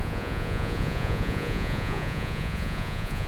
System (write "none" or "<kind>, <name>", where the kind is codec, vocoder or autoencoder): vocoder, Vocos